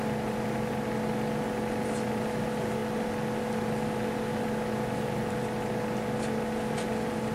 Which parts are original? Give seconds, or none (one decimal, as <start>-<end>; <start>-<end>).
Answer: 0.0-7.3